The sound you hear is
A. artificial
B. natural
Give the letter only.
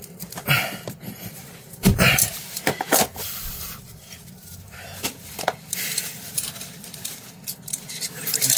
A